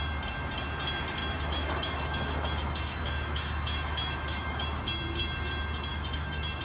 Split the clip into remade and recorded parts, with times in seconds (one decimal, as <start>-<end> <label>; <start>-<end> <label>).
0.0-1.2 recorded; 1.2-4.8 remade; 4.8-5.9 recorded; 5.9-6.6 remade